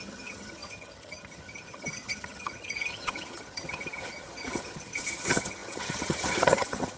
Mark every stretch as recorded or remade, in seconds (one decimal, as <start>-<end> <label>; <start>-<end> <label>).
0.0-7.0 remade